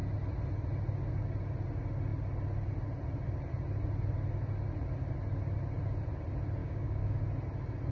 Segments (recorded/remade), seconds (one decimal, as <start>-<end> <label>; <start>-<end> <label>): 0.0-6.6 recorded; 6.6-7.2 remade; 7.2-7.9 recorded